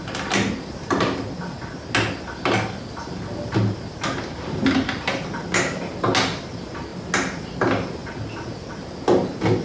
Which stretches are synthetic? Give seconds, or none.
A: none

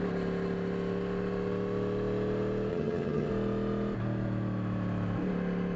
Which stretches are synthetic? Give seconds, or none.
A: 2.7-3.3 (vocoder, HiFi-GAN)

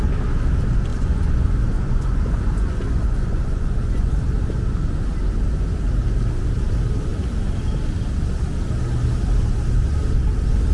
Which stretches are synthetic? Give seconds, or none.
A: 0.9-4.1 (vocoder, Vocos)

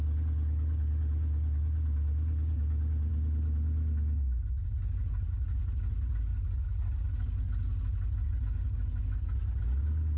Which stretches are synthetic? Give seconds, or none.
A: none

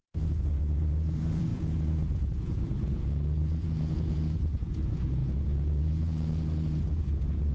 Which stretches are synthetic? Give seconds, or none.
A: 0.0-7.5 (vocoder, Vocos)

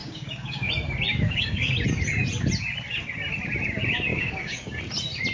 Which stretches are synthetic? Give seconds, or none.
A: 0.0-0.7 (codec, DAC); 1.1-1.7; 4.1-4.8

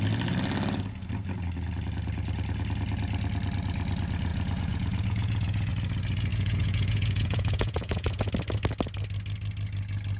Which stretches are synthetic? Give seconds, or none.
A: 4.3-5.7 (vocoder, Vocos); 6.3-8.3